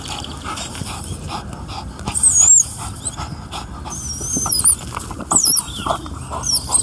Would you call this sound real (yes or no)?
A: yes